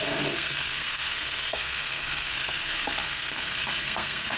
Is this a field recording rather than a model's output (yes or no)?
no